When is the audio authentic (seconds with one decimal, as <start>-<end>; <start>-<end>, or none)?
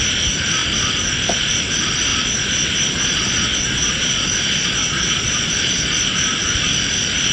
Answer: 0.0-2.1; 5.5-7.3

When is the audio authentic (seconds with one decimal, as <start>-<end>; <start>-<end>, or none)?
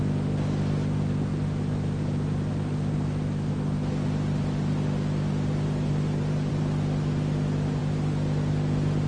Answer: 0.0-9.1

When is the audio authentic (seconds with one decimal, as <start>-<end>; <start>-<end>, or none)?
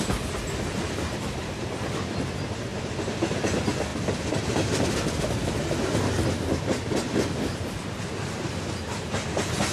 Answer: 0.0-9.7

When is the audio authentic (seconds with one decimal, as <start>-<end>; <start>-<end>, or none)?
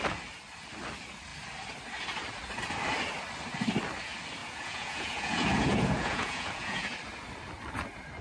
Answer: 0.0-4.4; 7.0-8.2